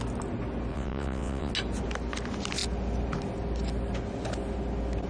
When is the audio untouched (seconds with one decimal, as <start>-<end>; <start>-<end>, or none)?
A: 0.0-0.7; 1.5-5.1